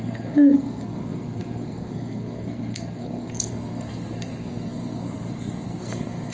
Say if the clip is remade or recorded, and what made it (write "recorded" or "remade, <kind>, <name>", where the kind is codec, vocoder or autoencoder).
remade, codec, SNAC